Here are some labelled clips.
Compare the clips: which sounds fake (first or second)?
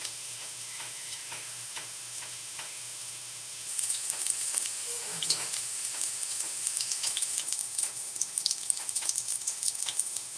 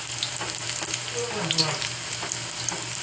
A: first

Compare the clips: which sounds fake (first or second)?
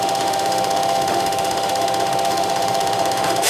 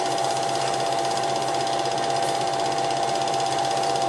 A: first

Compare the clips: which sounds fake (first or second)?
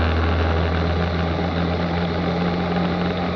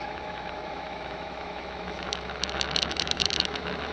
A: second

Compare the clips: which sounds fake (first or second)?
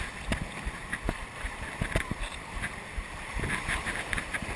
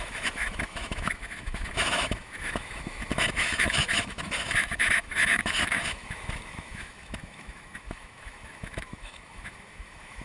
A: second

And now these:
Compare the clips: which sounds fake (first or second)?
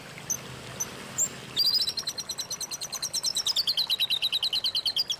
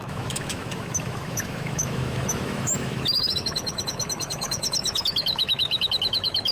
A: second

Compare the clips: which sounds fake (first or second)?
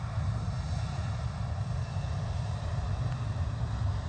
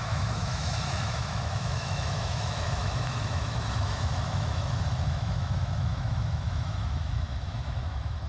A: second